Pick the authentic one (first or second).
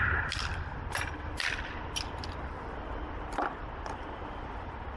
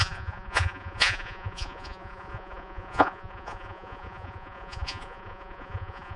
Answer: first